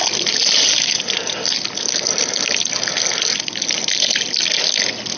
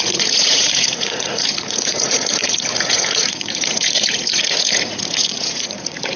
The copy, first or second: second